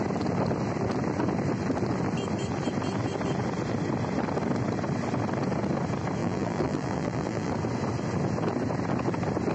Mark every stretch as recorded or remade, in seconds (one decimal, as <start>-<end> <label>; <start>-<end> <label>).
0.0-6.2 recorded; 6.2-7.5 remade; 7.5-9.5 recorded